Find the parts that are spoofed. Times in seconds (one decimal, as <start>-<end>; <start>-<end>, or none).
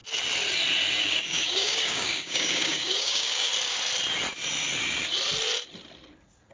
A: 1.0-3.5